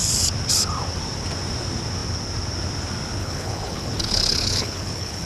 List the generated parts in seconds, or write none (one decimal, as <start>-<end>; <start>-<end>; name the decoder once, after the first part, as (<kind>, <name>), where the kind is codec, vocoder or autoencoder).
3.2-5.3 (codec, HILCodec)

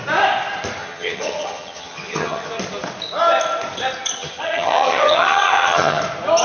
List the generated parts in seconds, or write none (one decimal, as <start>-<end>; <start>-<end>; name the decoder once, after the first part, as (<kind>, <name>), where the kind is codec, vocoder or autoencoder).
0.8-2.5 (vocoder, HiFi-GAN); 4.2-6.0